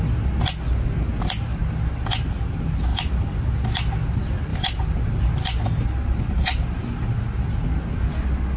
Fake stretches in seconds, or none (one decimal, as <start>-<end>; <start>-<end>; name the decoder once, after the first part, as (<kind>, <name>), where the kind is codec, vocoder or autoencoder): 2.9-3.5 (vocoder, BigVGAN v2); 4.5-5.4